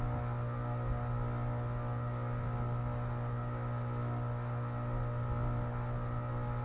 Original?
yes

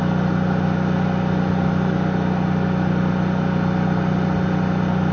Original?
yes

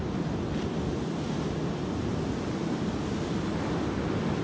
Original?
yes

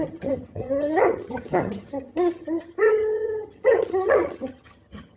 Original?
no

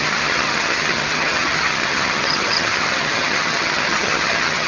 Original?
no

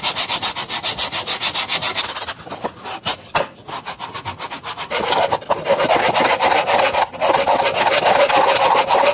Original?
yes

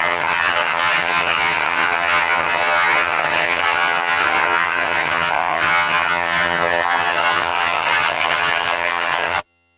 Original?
no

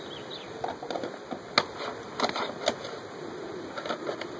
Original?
yes